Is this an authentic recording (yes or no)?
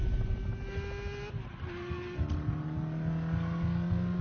yes